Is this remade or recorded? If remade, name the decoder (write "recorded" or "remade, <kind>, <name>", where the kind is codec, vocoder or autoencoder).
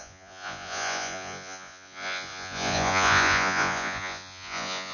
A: remade, vocoder, Vocos